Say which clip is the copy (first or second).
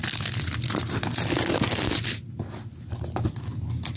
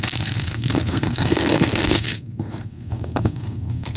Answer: second